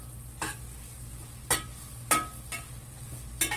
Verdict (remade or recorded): recorded